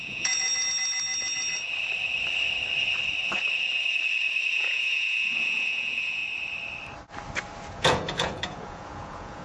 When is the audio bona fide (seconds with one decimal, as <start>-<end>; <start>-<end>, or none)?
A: 0.4-4.5; 6.2-7.7